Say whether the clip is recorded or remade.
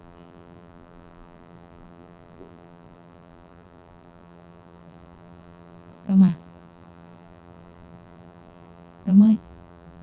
remade